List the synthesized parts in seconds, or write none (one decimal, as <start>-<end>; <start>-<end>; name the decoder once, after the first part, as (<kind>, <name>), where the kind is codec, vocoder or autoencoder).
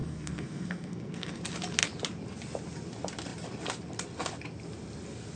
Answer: 0.0-1.4 (codec, SNAC)